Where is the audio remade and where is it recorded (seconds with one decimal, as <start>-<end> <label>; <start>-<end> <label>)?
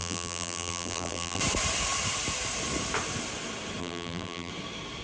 0.0-1.4 remade; 1.4-3.8 recorded; 3.8-4.5 remade; 4.5-5.0 recorded